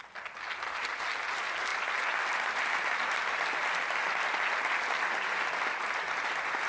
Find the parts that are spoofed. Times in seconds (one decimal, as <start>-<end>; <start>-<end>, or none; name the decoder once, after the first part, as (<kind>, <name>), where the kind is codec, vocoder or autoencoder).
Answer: none